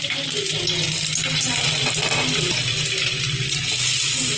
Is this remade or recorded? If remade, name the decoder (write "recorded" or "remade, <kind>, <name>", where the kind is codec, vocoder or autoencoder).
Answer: recorded